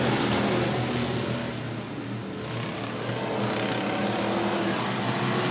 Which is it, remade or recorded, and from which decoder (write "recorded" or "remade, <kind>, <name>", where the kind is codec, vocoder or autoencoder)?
recorded